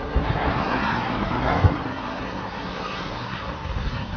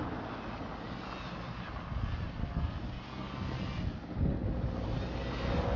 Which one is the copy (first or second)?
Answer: first